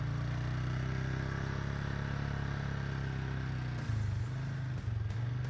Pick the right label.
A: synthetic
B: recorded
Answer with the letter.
B